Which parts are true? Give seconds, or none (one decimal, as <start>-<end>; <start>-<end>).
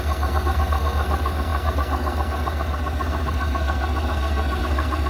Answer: none